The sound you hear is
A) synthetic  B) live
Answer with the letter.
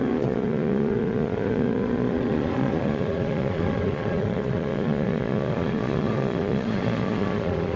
A